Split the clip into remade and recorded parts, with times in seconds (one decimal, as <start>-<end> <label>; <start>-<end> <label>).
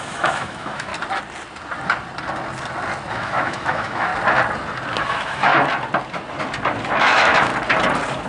0.0-0.9 remade; 0.9-3.1 recorded; 3.1-4.1 remade; 4.1-5.0 recorded; 5.0-5.5 remade; 5.5-7.0 recorded; 7.0-7.5 remade; 7.5-8.3 recorded